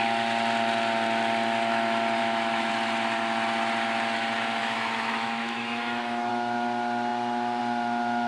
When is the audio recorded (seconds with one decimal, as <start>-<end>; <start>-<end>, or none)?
0.0-2.2; 2.7-4.6; 6.3-8.3